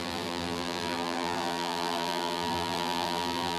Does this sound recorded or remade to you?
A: remade